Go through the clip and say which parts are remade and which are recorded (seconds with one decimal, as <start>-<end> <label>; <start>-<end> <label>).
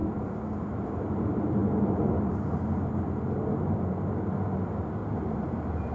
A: 0.0-5.0 recorded; 5.0-5.9 remade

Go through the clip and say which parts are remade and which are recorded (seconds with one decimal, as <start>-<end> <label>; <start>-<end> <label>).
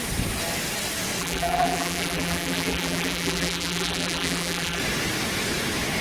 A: 0.0-1.2 recorded; 1.2-4.8 remade; 4.8-6.0 recorded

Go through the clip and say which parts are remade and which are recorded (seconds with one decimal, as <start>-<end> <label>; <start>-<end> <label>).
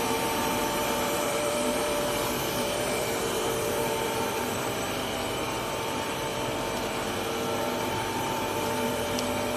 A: 0.0-6.3 remade; 6.3-7.6 recorded; 7.6-9.6 remade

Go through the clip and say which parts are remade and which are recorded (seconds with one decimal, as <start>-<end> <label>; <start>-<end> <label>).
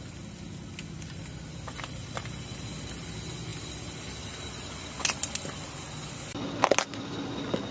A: 0.0-7.7 recorded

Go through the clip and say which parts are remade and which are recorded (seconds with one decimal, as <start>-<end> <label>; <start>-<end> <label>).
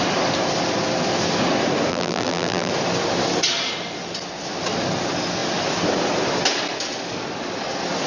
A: 0.0-1.9 recorded; 1.9-2.7 remade; 2.7-8.1 recorded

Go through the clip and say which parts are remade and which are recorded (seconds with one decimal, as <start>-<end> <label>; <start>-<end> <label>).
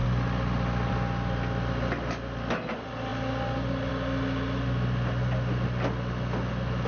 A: 0.0-6.9 recorded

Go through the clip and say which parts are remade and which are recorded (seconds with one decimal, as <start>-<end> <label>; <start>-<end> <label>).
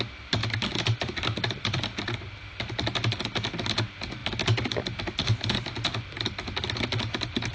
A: 0.0-0.4 recorded; 0.4-1.8 remade; 1.8-7.5 recorded